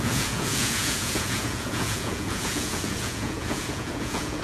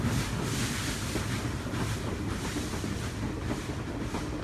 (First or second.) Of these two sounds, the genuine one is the second